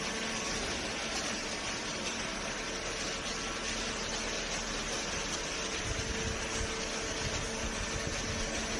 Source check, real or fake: real